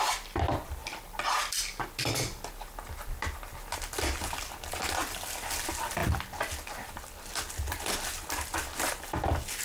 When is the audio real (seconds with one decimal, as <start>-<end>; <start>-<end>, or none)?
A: 0.0-9.6

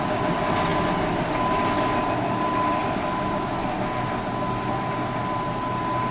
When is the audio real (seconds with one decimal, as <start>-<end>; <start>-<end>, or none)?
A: 0.0-6.1

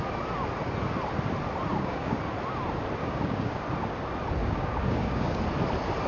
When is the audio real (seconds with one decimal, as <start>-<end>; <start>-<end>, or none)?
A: 0.0-1.7; 2.2-3.0; 3.6-4.4; 5.4-6.1

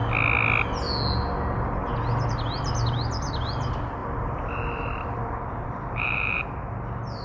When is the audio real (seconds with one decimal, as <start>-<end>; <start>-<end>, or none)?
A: 0.0-2.3

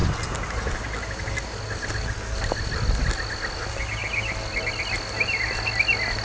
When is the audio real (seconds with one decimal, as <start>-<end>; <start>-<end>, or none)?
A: 0.0-6.2

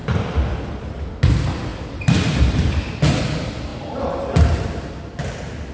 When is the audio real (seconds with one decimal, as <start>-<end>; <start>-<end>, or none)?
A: 0.0-1.7; 2.9-5.7

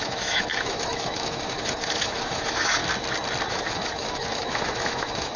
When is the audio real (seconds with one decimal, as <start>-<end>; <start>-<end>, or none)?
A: 2.8-3.5

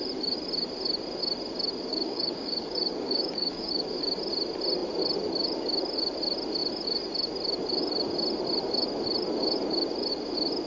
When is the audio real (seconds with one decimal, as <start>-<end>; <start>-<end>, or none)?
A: 0.0-1.9; 3.8-10.7